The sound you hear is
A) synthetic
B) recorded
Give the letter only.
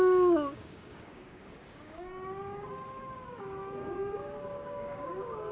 A